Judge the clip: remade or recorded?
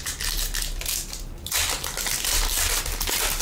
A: recorded